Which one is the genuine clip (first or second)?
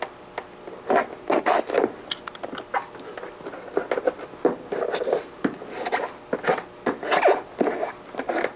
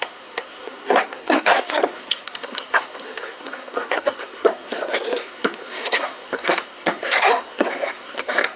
first